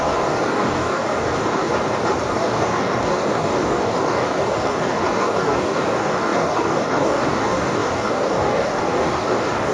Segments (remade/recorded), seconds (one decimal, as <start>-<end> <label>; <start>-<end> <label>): 0.0-1.7 remade; 1.7-2.3 recorded; 2.3-9.7 remade